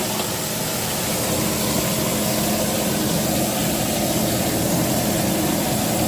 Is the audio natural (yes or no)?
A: yes